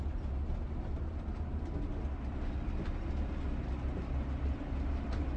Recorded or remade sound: recorded